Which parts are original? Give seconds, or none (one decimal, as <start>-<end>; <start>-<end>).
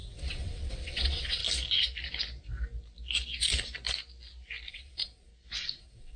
1.4-4.7; 5.3-5.8